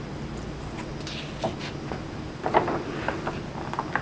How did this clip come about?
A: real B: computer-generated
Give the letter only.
A